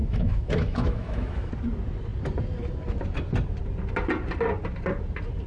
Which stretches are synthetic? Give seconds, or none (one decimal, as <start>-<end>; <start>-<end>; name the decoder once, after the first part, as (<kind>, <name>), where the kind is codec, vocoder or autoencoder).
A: 0.0-1.5 (autoencoder, DAC-VAE)